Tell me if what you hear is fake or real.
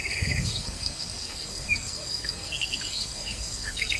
fake